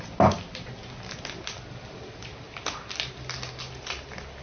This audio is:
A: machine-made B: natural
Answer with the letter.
B